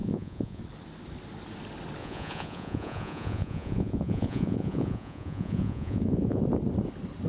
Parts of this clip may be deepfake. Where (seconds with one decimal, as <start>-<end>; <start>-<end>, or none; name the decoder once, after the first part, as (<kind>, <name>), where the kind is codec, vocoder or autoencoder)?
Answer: 0.0-0.6 (vocoder, Vocos); 2.0-6.4